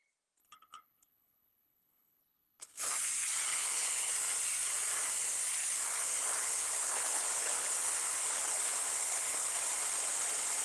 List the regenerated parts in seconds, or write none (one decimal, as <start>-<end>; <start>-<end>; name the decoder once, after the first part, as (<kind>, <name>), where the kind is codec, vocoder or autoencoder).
0.4-2.9 (codec, HILCodec); 3.5-4.1; 5.6-9.6